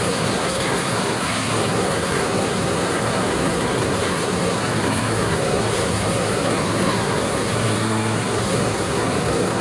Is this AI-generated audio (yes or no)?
yes